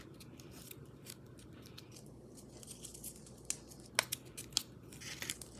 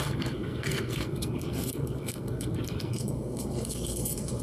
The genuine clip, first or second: first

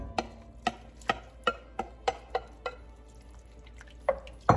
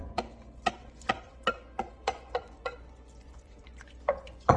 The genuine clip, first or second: first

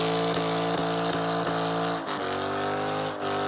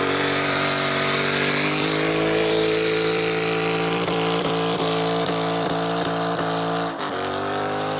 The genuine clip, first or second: first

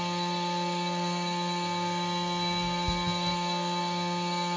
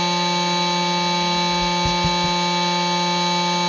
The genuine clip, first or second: second